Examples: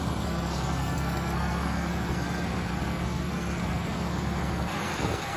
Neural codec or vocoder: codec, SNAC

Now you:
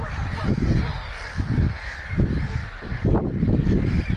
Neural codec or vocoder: none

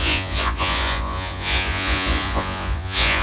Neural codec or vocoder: vocoder, Vocos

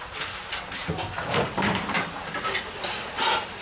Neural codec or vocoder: vocoder, BigVGAN v2